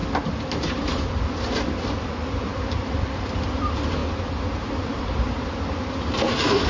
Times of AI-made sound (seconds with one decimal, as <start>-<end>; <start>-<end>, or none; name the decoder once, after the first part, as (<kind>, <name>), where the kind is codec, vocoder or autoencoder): 3.2-4.0 (vocoder, BigVGAN v2); 4.6-6.7

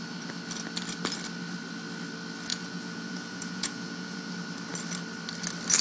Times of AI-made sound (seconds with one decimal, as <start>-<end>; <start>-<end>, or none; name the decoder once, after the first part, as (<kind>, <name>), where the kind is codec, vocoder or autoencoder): 2.5-4.3 (vocoder, Vocos)

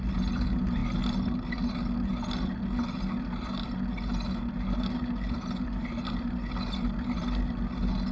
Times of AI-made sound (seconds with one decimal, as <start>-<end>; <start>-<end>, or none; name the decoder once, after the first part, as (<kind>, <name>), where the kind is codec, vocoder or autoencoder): none

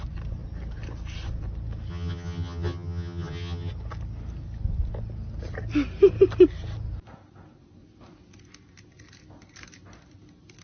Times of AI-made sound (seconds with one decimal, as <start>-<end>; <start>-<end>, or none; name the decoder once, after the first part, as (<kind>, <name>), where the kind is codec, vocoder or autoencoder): 1.9-3.7 (vocoder, HiFi-GAN)

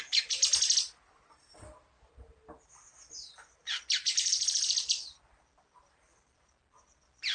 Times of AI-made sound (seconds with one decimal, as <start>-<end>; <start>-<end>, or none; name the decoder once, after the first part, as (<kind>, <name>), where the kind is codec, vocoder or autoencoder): 3.6-6.6 (vocoder, BigVGAN v2)

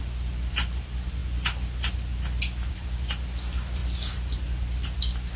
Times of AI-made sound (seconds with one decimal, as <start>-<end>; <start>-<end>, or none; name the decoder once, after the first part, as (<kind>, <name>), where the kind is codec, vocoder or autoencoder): 0.0-1.2 (vocoder, BigVGAN v2); 2.7-3.8

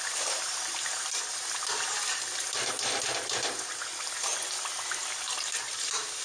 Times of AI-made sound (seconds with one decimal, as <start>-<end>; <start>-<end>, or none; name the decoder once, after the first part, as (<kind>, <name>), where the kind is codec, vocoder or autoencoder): none

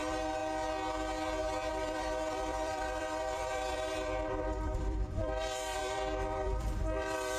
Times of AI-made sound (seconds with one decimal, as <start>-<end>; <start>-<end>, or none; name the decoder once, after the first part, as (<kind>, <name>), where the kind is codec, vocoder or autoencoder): 0.0-0.4 (vocoder, BigVGAN v2); 1.7-7.4